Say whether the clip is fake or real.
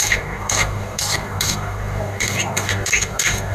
fake